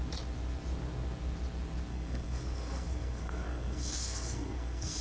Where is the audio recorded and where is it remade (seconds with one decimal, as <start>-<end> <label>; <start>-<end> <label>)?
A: 0.0-1.9 recorded; 1.9-5.0 remade